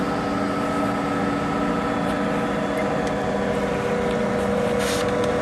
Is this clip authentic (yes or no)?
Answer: yes